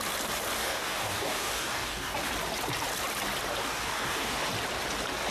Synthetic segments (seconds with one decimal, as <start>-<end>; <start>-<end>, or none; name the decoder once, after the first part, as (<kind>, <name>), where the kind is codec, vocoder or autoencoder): 0.6-2.3 (codec, DAC); 3.6-4.5